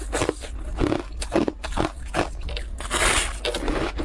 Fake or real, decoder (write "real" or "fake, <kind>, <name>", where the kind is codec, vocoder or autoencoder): real